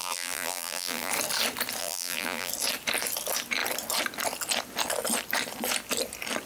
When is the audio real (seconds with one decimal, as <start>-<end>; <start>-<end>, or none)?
1.1-1.8; 2.5-6.5